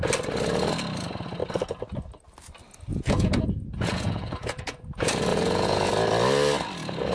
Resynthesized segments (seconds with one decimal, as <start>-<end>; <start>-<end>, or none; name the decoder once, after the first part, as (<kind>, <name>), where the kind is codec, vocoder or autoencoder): 2.9-4.8 (vocoder, Vocos); 5.3-5.9